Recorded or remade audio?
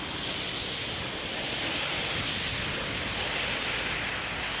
recorded